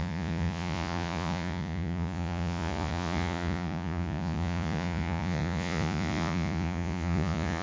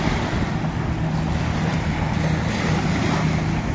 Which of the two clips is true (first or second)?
second